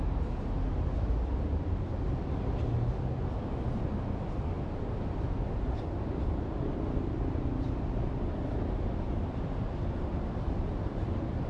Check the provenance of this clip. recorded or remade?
recorded